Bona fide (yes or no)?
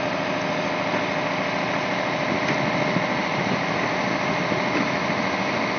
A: yes